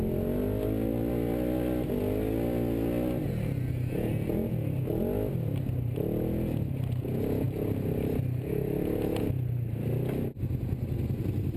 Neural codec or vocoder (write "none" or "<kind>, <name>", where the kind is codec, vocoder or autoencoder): none